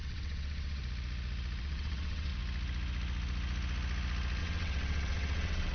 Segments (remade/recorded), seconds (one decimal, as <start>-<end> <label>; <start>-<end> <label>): 0.0-0.8 remade; 0.8-1.6 recorded; 1.6-2.3 remade; 2.3-4.4 recorded; 4.4-5.7 remade